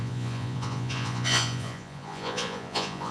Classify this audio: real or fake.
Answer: fake